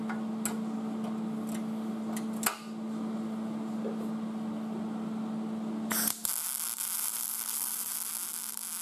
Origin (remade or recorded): recorded